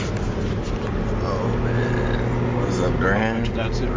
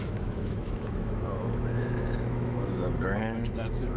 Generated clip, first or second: second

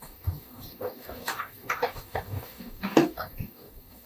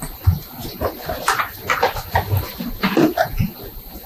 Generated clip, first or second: first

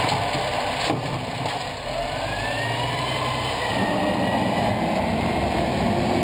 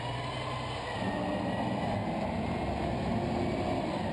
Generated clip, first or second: first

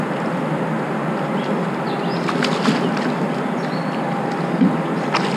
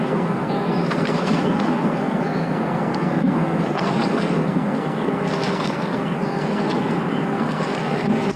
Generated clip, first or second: second